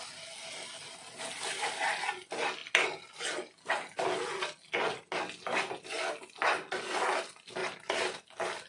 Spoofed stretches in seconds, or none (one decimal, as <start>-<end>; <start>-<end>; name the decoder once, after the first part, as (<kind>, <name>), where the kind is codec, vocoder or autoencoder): none